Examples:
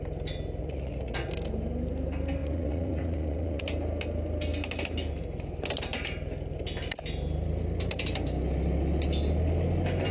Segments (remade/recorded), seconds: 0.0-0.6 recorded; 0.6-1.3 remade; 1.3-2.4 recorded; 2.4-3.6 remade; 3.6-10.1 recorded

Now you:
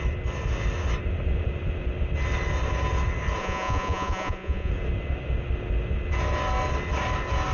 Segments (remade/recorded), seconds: 0.0-3.4 recorded; 3.4-4.7 remade; 4.7-7.5 recorded